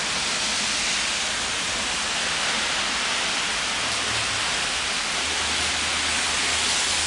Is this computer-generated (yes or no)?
no